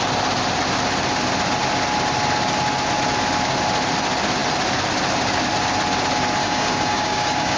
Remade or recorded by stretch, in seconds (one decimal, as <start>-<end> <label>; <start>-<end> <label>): 0.0-6.4 recorded; 6.4-7.6 remade